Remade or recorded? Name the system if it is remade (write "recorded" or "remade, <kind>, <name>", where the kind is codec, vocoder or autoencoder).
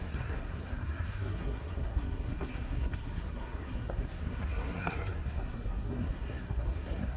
remade, codec, SNAC